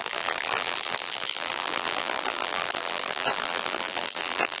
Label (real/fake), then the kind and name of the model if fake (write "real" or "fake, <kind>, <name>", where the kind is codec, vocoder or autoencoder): fake, vocoder, BigVGAN v2